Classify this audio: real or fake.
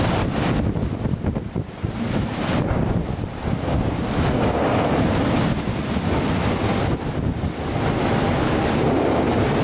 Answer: real